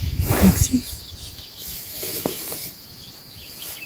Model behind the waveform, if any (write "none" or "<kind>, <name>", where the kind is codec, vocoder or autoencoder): autoencoder, DAC-VAE